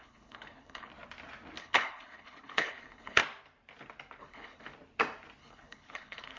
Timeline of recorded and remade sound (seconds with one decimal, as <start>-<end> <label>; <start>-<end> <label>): 0.0-0.9 remade; 0.9-1.6 recorded; 1.6-3.2 remade; 3.2-4.2 recorded; 4.2-4.7 remade; 4.7-5.4 recorded; 5.4-6.4 remade